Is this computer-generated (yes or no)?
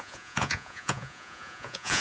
yes